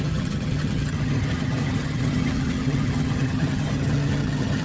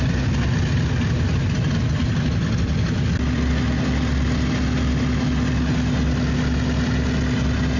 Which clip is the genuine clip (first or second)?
second